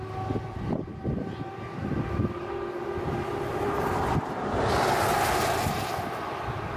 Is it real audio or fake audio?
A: real